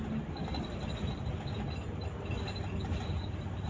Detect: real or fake real